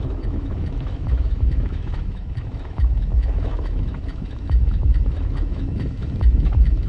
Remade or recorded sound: remade